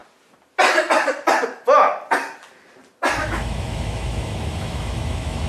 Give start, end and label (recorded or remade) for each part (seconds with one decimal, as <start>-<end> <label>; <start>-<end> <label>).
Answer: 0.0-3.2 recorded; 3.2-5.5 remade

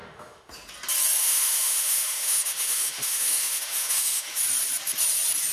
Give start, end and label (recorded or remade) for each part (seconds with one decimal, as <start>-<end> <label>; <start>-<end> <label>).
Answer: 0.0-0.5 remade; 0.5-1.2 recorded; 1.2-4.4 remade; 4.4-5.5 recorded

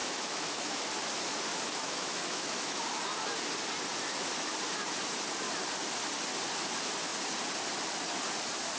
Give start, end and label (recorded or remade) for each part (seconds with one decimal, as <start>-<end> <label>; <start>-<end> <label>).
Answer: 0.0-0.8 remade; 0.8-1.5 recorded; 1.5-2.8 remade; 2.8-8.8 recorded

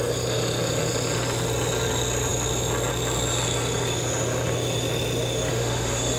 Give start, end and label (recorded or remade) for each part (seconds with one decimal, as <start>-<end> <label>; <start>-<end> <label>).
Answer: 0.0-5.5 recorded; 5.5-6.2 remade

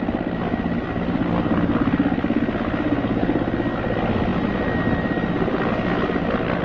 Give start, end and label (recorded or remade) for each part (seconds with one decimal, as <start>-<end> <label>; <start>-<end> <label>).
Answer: 0.0-6.6 recorded

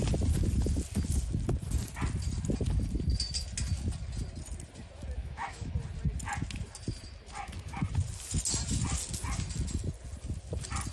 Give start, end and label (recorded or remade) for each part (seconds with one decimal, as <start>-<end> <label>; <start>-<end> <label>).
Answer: 0.0-5.2 recorded; 5.2-5.7 remade; 5.7-10.9 recorded